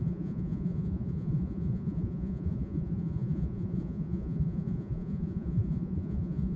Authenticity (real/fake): fake